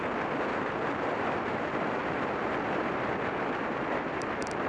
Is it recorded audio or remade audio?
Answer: recorded